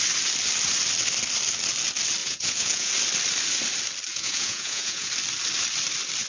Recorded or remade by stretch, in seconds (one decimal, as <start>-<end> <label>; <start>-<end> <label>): 0.0-2.2 recorded; 2.2-2.9 remade; 2.9-4.1 recorded; 4.1-5.1 remade; 5.1-6.3 recorded